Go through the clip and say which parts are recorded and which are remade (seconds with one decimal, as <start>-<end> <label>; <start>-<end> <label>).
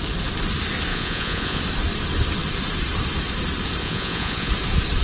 0.0-0.9 recorded; 0.9-1.6 remade; 1.6-3.8 recorded; 3.8-4.5 remade; 4.5-5.0 recorded